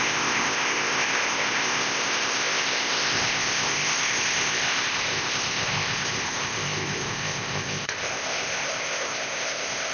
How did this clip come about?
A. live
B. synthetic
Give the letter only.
B